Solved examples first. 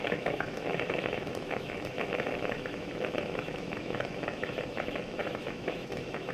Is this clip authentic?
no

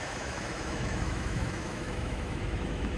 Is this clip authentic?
no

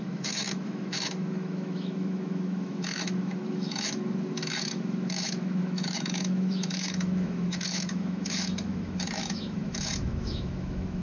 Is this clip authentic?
no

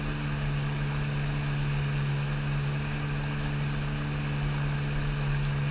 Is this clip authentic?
yes